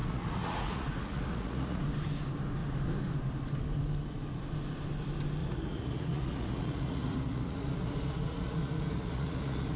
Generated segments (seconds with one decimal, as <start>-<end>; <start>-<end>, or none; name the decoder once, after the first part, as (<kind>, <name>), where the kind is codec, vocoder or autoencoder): 0.0-1.8 (vocoder, Vocos); 5.4-9.8